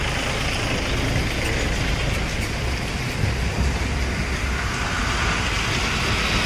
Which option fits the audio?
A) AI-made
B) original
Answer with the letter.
B